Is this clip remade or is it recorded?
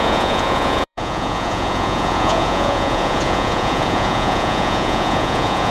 remade